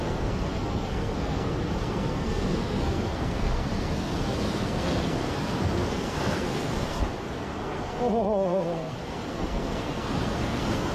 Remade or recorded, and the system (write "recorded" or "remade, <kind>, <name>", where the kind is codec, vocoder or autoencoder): remade, codec, SNAC